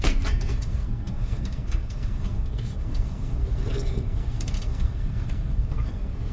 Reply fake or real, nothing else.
fake